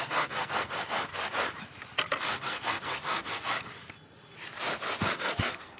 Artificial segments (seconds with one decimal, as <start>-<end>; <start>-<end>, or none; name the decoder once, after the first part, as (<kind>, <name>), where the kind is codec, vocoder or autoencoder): 0.0-1.1 (codec, SNAC); 2.2-3.7; 5.0-5.8